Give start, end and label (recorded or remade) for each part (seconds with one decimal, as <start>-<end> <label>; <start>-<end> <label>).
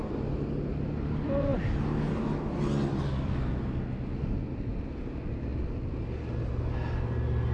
0.0-7.5 recorded